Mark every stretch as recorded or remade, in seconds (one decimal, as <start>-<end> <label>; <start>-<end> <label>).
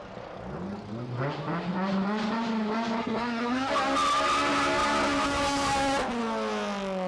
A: 0.0-3.0 recorded; 3.0-3.7 remade; 3.7-7.1 recorded